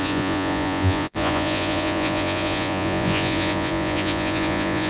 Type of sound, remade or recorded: remade